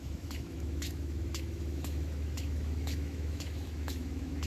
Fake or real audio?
fake